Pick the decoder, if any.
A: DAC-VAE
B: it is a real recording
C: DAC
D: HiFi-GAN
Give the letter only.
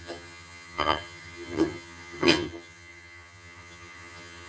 D